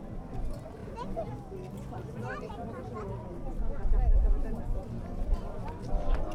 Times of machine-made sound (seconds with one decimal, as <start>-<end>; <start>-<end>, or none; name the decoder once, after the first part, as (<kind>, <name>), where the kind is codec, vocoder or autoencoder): none